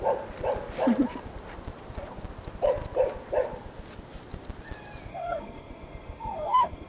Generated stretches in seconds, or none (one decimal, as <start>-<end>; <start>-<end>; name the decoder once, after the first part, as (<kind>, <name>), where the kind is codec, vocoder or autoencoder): 5.1-6.9 (codec, SNAC)